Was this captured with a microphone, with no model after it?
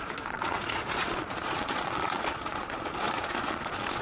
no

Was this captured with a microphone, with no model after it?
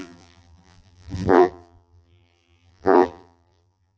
no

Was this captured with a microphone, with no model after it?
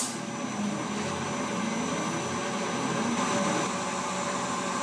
yes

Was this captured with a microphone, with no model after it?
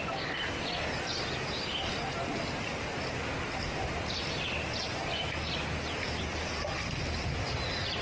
yes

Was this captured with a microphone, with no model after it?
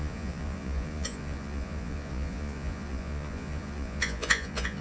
no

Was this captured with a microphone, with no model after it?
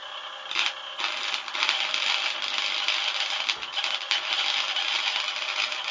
yes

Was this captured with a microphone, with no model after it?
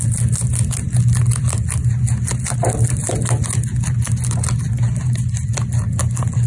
yes